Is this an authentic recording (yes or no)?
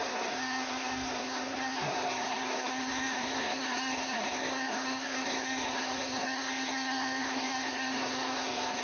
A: no